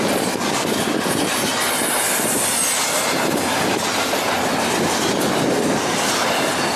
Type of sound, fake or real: real